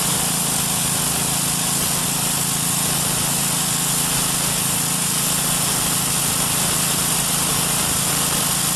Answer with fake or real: real